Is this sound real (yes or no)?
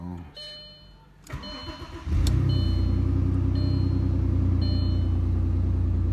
yes